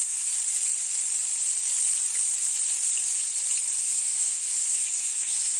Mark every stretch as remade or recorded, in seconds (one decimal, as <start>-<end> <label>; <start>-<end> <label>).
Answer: 0.0-0.4 remade; 0.4-3.8 recorded; 3.8-5.6 remade